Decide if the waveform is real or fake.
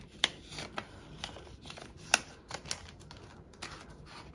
real